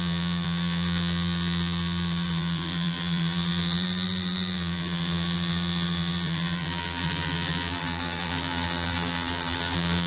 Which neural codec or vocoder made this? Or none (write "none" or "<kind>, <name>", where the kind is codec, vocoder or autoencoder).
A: vocoder, BigVGAN v2